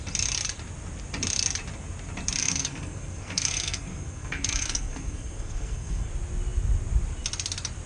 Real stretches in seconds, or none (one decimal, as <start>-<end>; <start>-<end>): 0.0-2.4; 6.1-7.9